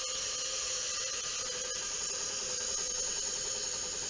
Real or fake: real